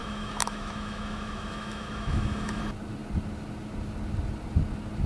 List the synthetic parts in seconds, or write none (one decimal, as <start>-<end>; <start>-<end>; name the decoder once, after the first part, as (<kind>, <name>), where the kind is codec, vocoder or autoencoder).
0.0-2.6 (autoencoder, DAC-VAE)